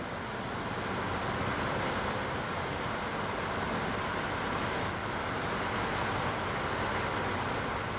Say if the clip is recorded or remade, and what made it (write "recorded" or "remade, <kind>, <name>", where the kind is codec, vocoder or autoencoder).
recorded